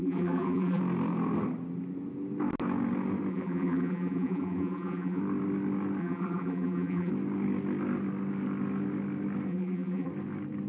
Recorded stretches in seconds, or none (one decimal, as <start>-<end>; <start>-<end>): 0.8-3.3; 5.2-6.0; 7.1-9.5; 10.1-10.7